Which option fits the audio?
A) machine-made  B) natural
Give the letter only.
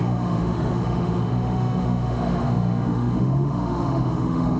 A